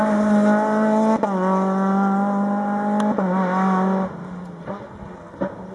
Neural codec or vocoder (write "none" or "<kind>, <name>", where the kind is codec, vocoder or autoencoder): none